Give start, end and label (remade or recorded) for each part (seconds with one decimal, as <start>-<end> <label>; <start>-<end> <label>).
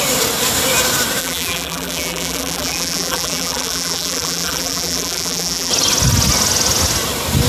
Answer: 0.0-1.2 recorded; 1.2-5.7 remade; 5.7-7.5 recorded